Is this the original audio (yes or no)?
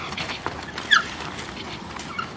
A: yes